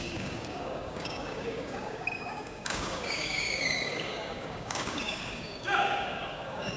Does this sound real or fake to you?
fake